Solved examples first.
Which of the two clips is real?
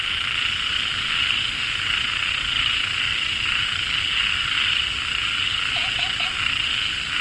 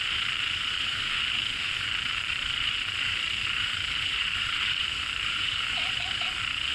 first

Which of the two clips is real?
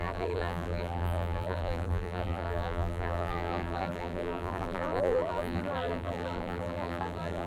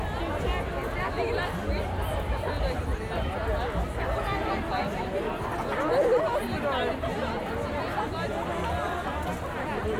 second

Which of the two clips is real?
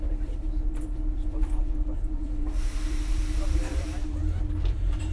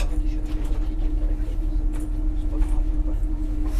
second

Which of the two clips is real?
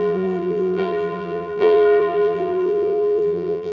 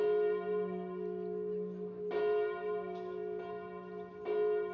second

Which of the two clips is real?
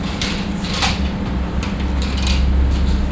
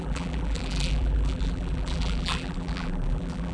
first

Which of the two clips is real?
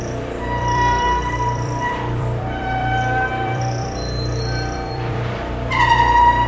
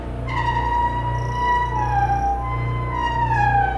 second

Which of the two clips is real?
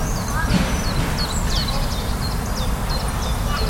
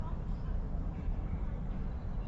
first